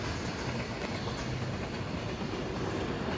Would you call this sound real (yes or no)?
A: yes